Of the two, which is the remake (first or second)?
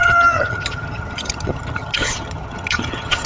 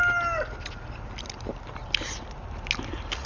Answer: first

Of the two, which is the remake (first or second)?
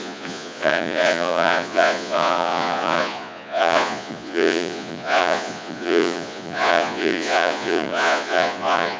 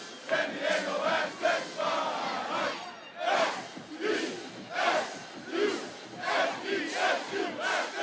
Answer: first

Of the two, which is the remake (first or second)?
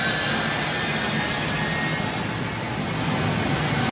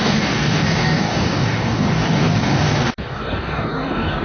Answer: second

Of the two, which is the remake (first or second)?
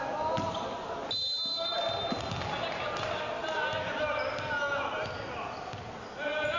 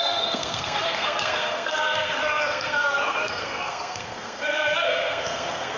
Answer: second